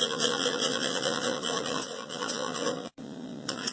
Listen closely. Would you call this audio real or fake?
fake